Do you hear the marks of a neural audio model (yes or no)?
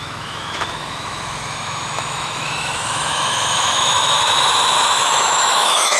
yes